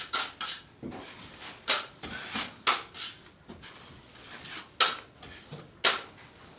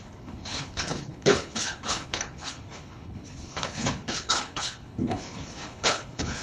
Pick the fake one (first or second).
second